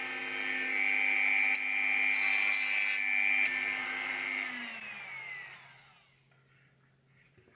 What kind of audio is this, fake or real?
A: real